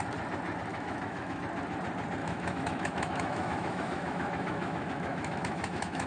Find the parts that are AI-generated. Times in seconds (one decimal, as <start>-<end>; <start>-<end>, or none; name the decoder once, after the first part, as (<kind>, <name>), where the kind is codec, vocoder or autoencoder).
0.7-1.4 (autoencoder, DAC-VAE); 2.2-6.1